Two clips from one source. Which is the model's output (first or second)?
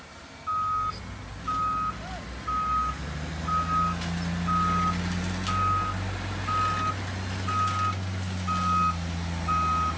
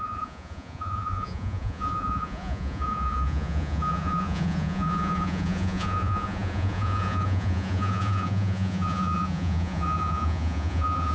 second